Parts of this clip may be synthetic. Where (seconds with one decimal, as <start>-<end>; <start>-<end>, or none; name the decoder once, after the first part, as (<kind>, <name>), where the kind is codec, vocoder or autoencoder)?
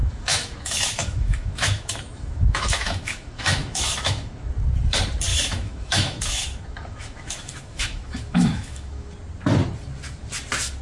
0.0-4.5 (autoencoder, DAC-VAE); 5.3-9.1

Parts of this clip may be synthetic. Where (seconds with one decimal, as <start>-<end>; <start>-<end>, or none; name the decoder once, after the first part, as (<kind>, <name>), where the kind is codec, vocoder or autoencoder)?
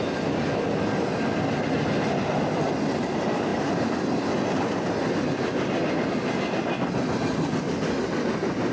none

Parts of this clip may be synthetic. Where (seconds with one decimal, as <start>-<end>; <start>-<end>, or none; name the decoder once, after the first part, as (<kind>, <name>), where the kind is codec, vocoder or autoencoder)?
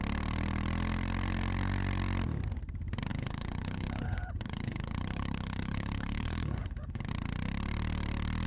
3.1-7.1 (codec, HILCodec)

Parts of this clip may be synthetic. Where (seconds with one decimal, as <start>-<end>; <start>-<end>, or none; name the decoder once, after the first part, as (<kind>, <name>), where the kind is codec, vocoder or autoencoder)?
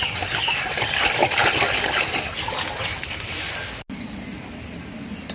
none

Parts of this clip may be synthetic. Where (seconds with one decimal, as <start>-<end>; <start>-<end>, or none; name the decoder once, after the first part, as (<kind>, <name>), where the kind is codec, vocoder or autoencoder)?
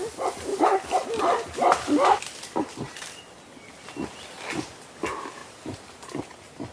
0.5-1.2 (vocoder, BigVGAN v2); 1.7-4.3; 5.4-6.2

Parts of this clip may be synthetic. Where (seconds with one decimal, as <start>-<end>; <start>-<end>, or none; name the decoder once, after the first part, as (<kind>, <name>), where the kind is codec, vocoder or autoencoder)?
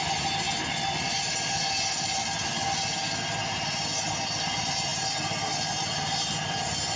none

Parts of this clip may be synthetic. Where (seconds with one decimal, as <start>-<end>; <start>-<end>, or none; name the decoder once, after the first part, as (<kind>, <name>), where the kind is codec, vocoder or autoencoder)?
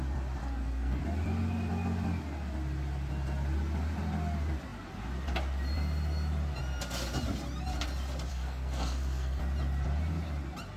0.4-1.0 (codec, SNAC); 8.3-9.4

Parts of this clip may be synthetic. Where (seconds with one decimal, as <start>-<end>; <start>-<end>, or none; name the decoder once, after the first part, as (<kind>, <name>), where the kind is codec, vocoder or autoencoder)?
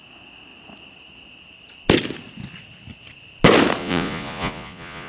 3.8-5.1 (vocoder, Vocos)